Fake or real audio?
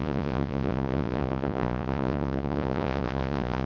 fake